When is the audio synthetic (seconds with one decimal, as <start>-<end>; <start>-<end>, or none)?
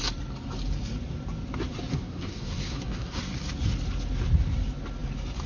1.9-3.2